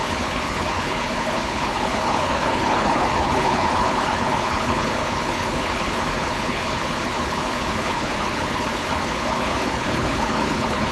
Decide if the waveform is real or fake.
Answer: fake